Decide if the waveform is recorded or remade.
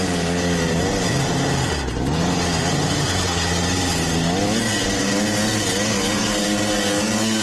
recorded